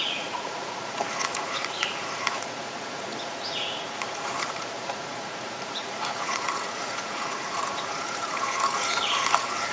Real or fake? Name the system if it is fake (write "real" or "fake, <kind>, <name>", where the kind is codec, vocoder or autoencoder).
fake, vocoder, Vocos